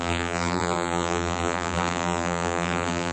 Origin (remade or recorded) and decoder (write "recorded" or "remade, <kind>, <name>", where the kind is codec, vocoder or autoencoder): remade, vocoder, BigVGAN v2